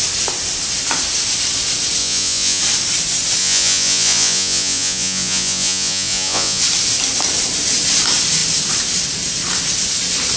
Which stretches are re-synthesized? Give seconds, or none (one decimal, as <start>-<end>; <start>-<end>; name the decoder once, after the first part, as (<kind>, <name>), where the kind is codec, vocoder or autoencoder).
2.0-2.6 (vocoder, Vocos); 3.4-6.6